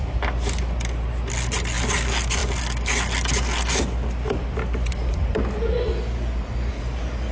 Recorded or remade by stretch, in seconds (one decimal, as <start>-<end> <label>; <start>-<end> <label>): 0.0-7.3 recorded